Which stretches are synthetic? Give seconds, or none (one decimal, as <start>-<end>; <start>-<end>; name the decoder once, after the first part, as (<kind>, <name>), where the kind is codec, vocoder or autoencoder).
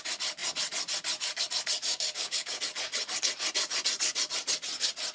1.9-2.6 (codec, DAC)